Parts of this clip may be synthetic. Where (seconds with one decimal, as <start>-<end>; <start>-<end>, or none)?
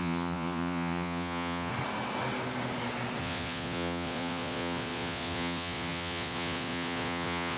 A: 0.0-1.7; 3.2-7.6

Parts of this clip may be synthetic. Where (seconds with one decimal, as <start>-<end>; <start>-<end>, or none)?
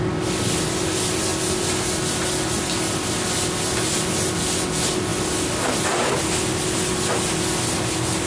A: none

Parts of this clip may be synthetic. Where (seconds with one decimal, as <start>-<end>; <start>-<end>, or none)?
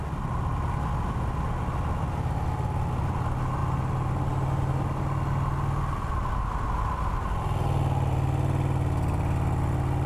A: none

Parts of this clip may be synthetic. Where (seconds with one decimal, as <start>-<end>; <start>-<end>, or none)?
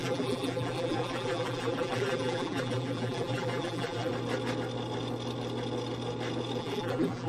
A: 0.0-4.1; 6.6-7.3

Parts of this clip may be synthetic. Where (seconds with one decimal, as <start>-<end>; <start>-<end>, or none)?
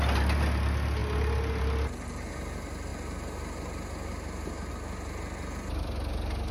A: none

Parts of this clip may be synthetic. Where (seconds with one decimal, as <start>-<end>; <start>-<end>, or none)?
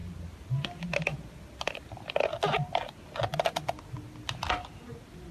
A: none